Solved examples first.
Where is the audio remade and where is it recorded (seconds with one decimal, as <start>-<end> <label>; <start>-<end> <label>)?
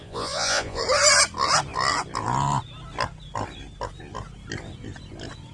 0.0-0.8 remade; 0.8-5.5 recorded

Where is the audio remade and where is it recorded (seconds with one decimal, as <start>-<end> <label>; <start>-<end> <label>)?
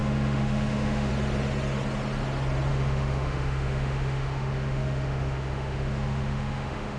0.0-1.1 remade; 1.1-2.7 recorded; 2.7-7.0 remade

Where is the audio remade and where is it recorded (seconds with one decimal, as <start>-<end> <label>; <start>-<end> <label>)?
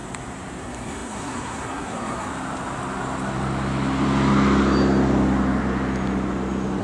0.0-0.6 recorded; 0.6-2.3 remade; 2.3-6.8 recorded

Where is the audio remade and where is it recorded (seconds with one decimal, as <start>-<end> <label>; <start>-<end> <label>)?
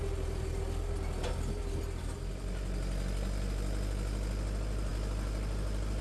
0.0-6.0 recorded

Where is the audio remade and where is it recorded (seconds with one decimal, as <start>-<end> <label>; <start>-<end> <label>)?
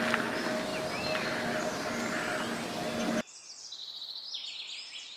0.0-5.2 recorded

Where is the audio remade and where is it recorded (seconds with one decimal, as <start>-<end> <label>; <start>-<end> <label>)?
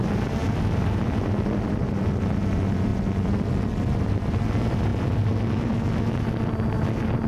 0.0-0.4 recorded; 0.4-1.1 remade; 1.1-7.3 recorded